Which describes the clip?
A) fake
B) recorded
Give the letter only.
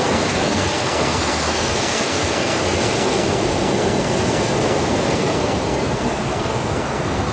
A